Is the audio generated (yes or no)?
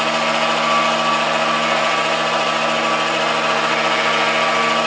no